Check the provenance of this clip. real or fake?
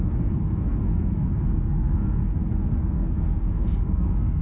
fake